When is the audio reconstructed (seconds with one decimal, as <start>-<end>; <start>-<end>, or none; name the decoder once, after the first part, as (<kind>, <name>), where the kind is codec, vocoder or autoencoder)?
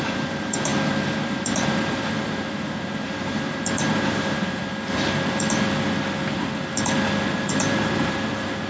0.0-0.7 (vocoder, BigVGAN v2); 1.2-4.6; 7.3-8.7